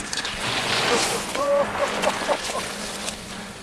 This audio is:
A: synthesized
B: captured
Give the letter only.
A